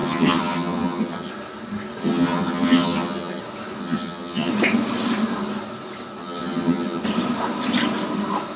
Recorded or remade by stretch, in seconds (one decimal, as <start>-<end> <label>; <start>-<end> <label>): 0.0-1.3 remade; 1.3-2.0 recorded; 2.0-3.4 remade; 3.4-3.8 recorded; 3.8-4.5 remade; 4.5-6.2 recorded; 6.2-7.0 remade; 7.0-8.6 recorded